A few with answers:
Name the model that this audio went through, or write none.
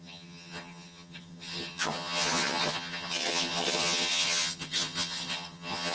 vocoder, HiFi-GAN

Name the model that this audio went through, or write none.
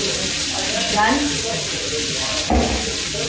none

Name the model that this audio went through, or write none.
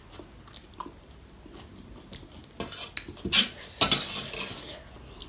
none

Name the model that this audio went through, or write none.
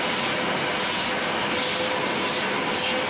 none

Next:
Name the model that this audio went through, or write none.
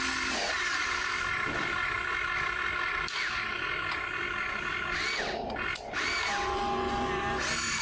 none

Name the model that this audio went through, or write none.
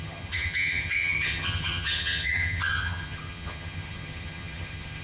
vocoder, HiFi-GAN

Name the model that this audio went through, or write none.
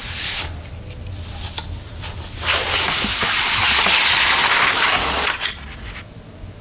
none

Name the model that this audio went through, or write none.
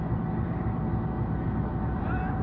none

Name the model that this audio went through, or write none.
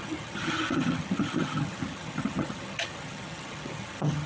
vocoder, HiFi-GAN